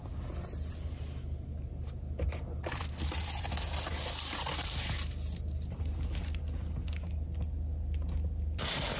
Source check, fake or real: real